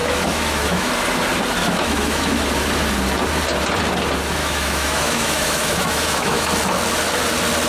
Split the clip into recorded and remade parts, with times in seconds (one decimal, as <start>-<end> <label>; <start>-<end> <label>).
0.0-0.9 remade; 0.9-1.6 recorded; 1.6-2.4 remade; 2.4-4.4 recorded; 4.4-6.5 remade; 6.5-7.7 recorded